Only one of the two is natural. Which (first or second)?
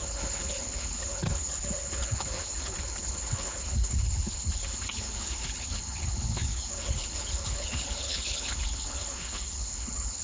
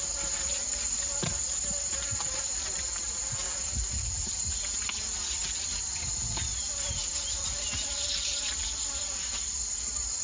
second